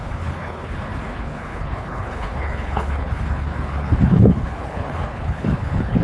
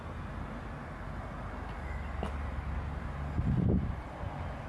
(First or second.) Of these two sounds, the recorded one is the second